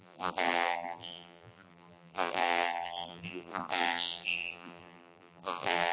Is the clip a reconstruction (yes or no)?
yes